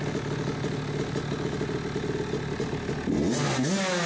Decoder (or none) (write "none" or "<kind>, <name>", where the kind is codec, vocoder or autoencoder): none